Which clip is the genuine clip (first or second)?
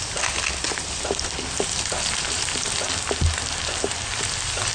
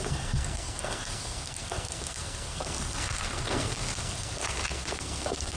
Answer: first